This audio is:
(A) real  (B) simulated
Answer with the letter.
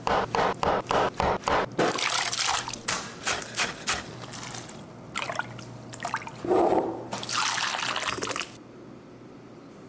A